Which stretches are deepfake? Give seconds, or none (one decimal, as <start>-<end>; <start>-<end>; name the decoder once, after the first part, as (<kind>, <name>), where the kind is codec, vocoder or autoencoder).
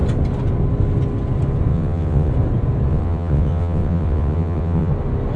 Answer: 1.7-2.3 (vocoder, WaveNeXt); 2.9-4.9